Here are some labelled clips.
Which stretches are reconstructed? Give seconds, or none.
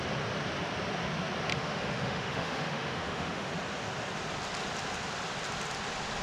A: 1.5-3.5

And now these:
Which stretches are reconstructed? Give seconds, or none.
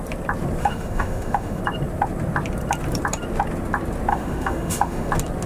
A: 0.6-1.6; 4.1-5.1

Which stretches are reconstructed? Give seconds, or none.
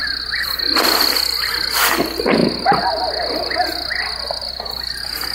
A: none